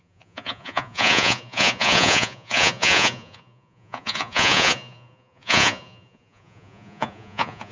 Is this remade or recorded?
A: remade